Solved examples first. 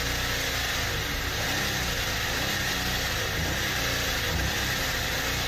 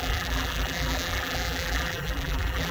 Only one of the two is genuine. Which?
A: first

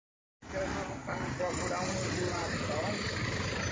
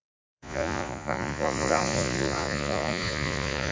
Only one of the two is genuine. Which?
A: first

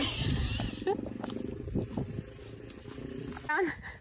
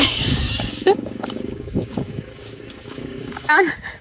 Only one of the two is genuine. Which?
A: first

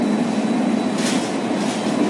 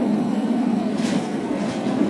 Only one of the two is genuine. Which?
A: first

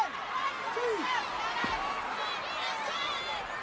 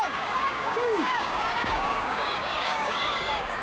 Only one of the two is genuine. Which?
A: first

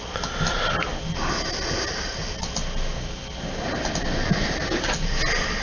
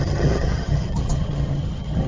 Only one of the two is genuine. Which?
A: first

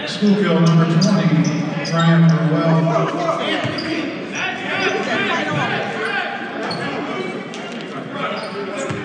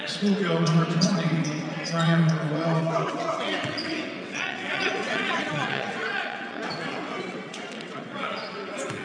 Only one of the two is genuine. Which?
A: first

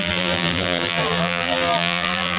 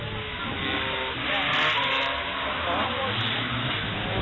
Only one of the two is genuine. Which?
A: second